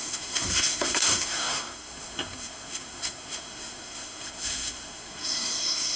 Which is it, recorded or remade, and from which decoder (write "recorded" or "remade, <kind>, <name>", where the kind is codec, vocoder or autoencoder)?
remade, codec, SNAC